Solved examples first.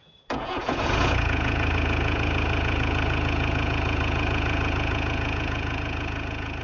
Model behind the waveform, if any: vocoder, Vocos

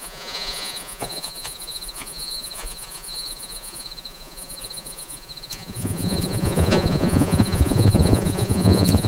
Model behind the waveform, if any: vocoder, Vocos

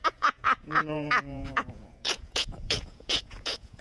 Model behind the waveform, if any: vocoder, Vocos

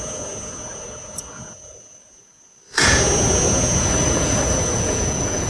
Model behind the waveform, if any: vocoder, Vocos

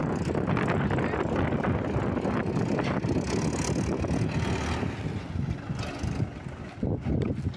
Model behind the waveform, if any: none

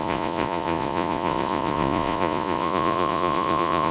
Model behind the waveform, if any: vocoder, Vocos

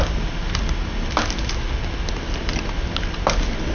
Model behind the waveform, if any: none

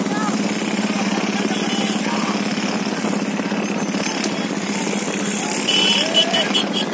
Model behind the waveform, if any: none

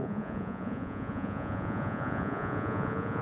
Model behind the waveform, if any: vocoder, Vocos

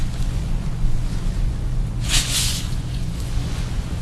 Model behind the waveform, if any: vocoder, Vocos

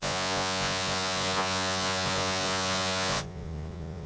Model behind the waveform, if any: vocoder, Vocos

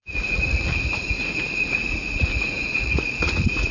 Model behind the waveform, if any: vocoder, Vocos